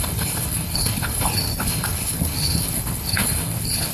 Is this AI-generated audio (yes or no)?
yes